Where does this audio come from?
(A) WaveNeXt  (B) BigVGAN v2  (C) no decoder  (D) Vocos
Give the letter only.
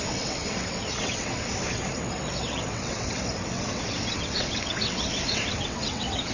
A